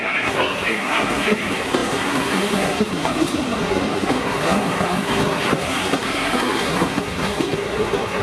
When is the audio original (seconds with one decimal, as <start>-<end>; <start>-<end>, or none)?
none